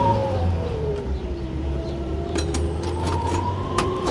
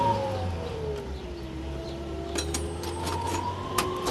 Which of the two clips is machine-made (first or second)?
first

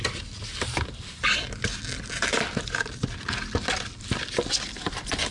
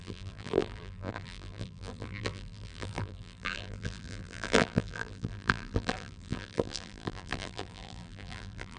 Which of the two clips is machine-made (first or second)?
second